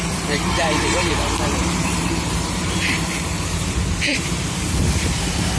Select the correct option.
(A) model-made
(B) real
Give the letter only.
A